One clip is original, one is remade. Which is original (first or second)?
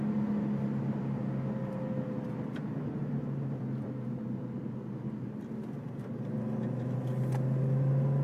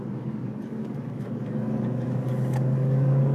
first